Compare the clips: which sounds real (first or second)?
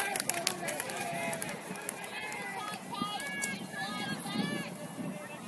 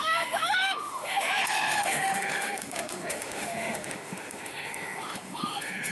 first